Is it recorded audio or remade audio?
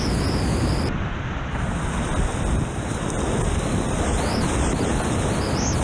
remade